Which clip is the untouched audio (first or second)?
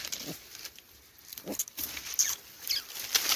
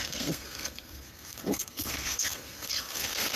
first